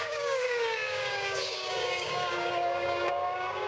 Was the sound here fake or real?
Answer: fake